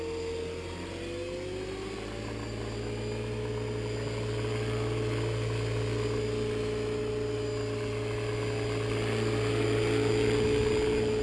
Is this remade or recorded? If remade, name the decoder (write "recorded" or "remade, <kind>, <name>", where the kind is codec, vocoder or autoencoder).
recorded